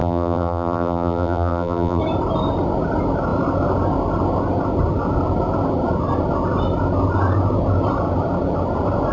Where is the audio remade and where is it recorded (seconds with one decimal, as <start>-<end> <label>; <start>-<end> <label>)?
0.0-2.0 remade; 2.0-9.1 recorded